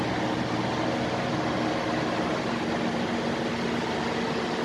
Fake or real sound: real